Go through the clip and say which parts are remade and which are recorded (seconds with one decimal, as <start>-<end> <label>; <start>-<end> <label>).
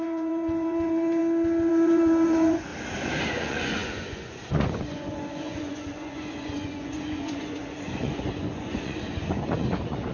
0.0-1.2 remade; 1.2-1.7 recorded; 1.7-2.7 remade; 2.7-3.3 recorded; 3.3-10.1 remade